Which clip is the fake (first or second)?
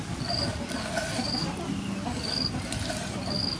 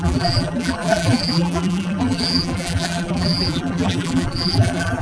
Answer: second